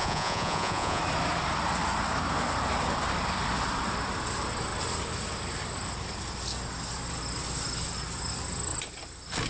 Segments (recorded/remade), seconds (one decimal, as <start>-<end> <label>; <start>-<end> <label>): 0.0-1.0 remade; 1.0-9.5 recorded